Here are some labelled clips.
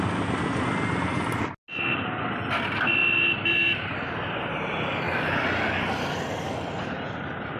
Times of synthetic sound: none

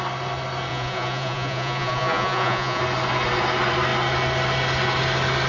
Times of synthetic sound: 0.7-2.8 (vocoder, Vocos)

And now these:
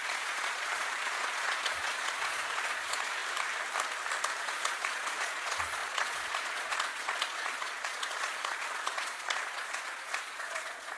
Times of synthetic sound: 0.0-3.2 (vocoder, Vocos); 4.4-11.0

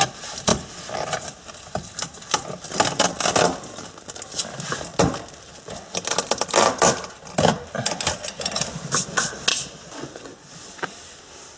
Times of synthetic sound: 9.5-10.5 (vocoder, Vocos)